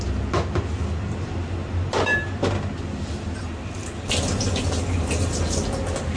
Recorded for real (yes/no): yes